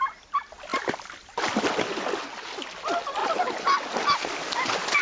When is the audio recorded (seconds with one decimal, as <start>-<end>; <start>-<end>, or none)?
0.0-0.7; 1.7-5.0